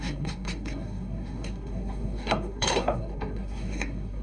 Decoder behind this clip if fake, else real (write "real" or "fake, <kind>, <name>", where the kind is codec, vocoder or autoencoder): fake, codec, SNAC